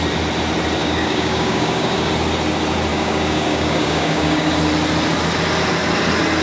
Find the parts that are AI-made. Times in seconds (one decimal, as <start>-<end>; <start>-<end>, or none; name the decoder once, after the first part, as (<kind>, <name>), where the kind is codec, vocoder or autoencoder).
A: 0.8-2.1 (codec, DAC); 2.9-4.5